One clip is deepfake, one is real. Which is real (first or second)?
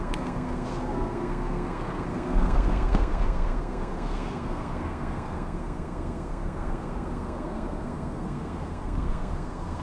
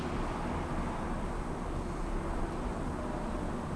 second